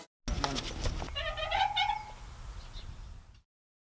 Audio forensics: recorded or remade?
recorded